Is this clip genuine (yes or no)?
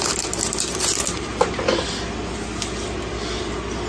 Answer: yes